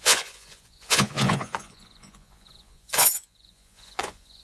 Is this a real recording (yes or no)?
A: no